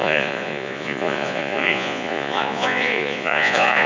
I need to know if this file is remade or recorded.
remade